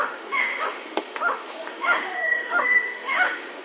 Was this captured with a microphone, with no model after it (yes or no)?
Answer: no